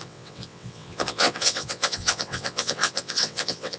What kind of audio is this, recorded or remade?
remade